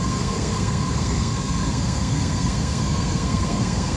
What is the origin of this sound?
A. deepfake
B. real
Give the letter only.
A